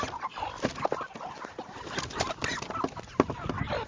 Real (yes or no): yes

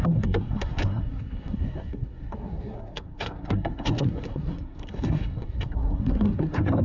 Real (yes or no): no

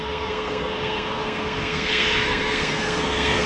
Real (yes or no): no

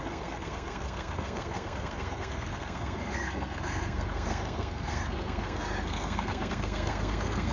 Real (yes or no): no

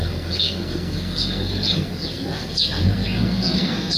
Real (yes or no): no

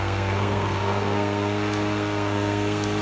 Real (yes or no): no